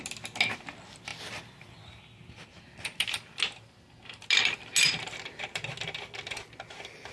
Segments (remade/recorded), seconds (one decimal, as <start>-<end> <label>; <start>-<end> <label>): 0.0-7.1 recorded